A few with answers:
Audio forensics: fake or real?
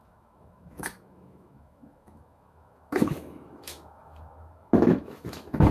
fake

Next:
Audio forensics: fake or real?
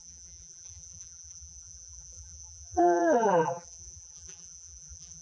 fake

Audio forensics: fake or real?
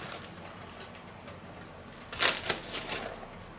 real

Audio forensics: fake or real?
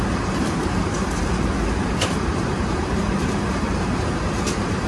fake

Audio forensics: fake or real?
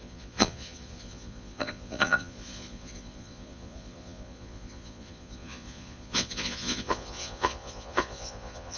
fake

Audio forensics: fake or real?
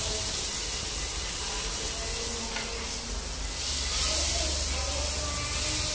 real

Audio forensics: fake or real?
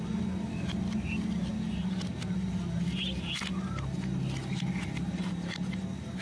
real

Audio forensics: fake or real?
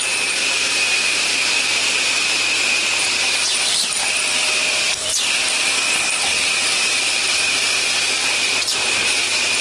fake